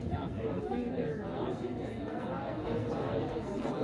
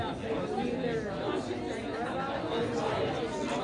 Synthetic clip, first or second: first